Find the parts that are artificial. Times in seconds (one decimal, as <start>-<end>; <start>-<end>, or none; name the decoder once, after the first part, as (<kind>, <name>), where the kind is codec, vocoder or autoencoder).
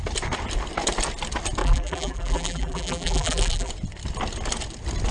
1.6-3.7 (vocoder, BigVGAN v2)